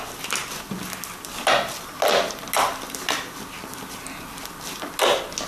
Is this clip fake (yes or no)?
no